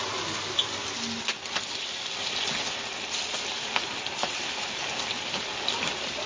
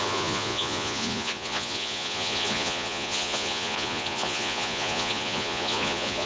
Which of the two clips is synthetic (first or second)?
second